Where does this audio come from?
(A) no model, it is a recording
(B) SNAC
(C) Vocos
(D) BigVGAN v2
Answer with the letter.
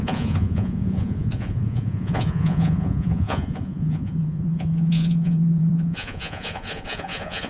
C